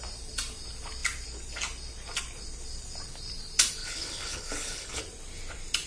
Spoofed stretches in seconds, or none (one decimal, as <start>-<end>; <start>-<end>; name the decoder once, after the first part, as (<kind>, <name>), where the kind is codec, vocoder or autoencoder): 3.8-5.0 (codec, HILCodec)